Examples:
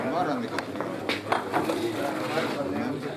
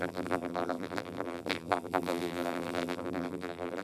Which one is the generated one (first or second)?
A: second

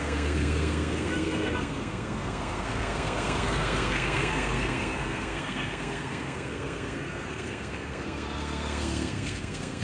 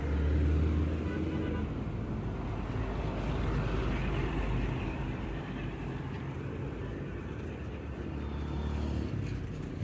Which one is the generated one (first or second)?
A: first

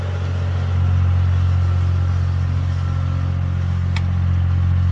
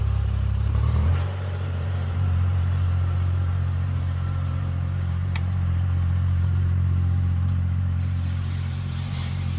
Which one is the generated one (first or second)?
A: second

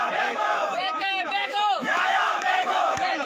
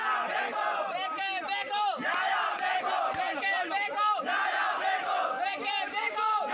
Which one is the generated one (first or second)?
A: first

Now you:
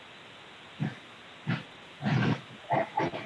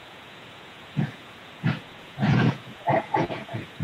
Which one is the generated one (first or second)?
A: second